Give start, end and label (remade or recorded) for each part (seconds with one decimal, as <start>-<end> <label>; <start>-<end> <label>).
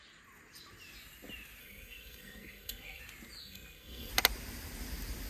0.0-1.6 recorded; 1.6-3.0 remade; 3.0-3.4 recorded; 3.4-4.1 remade; 4.1-5.3 recorded